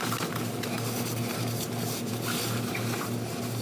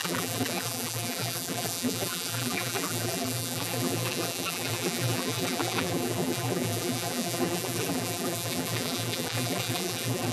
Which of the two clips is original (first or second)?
first